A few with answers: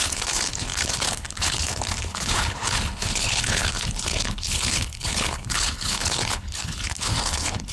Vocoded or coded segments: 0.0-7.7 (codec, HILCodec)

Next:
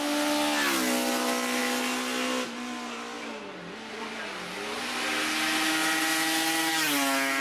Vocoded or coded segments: none

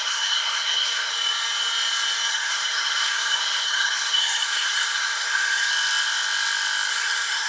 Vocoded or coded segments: 0.0-1.1 (codec, SNAC); 2.3-5.7; 6.9-7.5

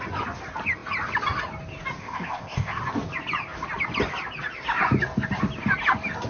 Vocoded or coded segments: 2.0-2.8 (codec, ZipCodec)

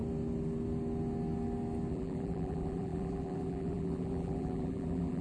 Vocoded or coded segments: 1.9-5.2 (vocoder, BigVGAN v2)

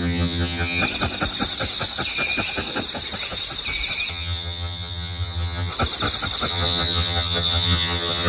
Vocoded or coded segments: 0.0-0.8 (vocoder, HiFi-GAN); 4.1-5.7; 6.5-8.3

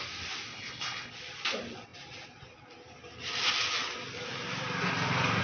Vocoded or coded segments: 0.5-1.1 (codec, HILCodec)